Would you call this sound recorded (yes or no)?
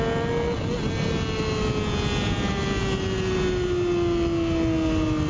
yes